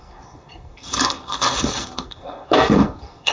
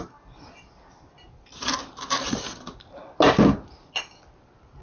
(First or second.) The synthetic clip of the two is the first